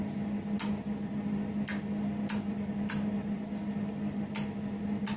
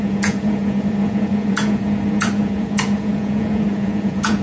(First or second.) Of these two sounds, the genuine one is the first